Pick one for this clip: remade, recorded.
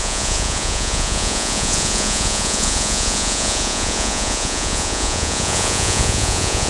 remade